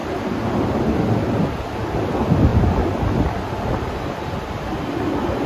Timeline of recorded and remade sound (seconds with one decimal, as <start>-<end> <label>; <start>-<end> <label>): 0.0-5.5 recorded